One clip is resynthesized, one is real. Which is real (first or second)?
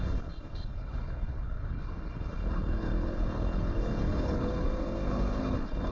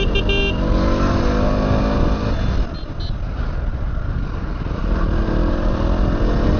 second